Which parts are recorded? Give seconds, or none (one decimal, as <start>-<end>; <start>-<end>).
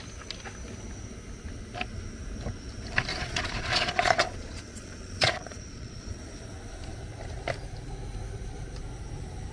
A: 0.0-3.1; 6.2-9.5